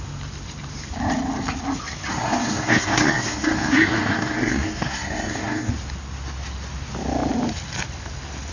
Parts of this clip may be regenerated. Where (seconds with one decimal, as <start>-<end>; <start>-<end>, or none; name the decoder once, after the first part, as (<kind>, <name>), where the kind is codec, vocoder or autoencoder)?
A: 2.1-5.7 (codec, SNAC)